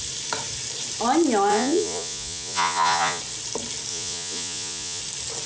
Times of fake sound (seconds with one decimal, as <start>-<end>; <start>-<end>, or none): 1.5-3.2; 3.9-5.0